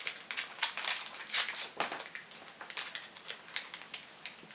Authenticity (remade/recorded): recorded